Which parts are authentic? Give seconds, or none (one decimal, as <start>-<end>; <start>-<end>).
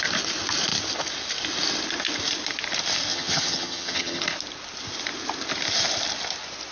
0.0-3.1; 4.2-6.7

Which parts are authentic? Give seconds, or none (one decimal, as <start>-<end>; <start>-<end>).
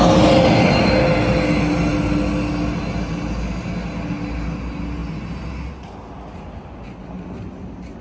0.0-8.0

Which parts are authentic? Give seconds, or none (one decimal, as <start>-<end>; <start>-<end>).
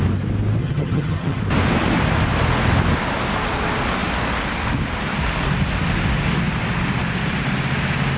0.0-0.6; 1.4-8.2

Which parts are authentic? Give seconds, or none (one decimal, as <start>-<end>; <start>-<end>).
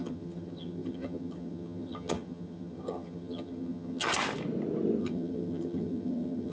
4.1-5.0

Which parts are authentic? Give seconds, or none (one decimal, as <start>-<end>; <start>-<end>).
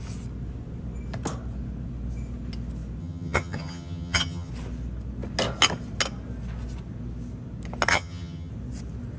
0.0-3.0; 4.5-7.9; 8.5-9.2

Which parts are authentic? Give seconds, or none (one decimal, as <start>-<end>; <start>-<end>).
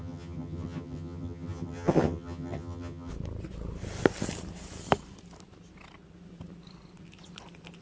3.1-7.8